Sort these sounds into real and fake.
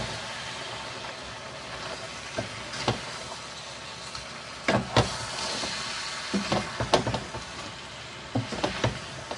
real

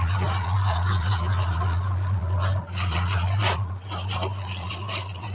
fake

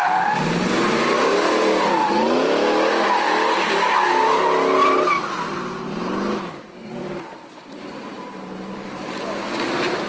real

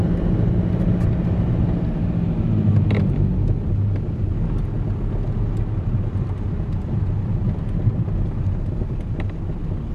real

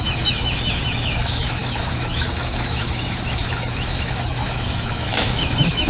fake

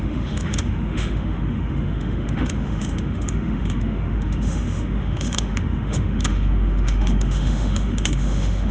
fake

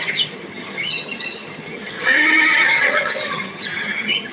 fake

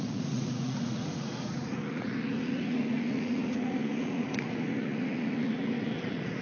fake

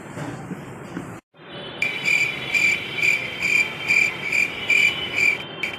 fake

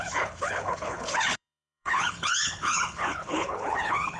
fake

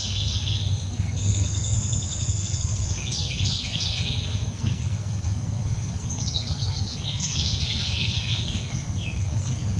fake